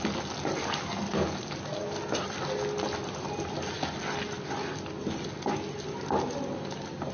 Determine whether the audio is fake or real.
real